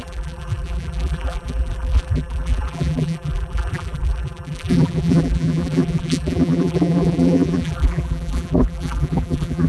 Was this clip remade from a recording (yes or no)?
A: yes